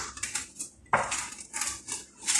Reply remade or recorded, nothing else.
recorded